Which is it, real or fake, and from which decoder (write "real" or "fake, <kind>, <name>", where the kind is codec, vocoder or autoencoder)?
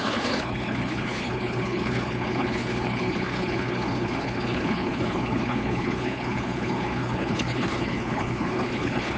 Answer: fake, codec, HILCodec